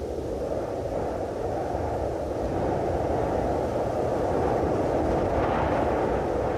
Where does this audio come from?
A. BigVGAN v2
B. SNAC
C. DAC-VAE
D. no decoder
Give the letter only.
D